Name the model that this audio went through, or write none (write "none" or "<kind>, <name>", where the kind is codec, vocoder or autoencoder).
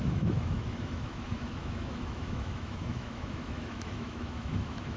autoencoder, DAC-VAE